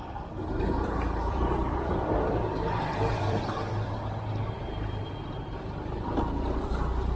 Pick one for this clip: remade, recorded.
remade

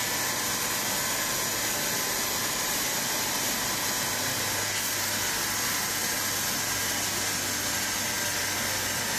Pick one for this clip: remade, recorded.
recorded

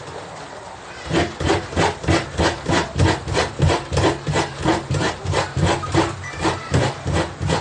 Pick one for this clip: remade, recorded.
recorded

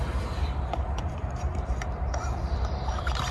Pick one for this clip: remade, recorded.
remade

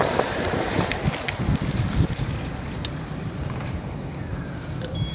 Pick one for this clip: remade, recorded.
remade